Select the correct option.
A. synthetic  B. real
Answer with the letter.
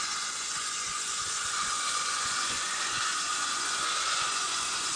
A